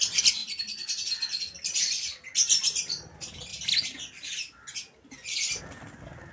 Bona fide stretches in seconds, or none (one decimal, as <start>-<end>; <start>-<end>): 0.0-6.3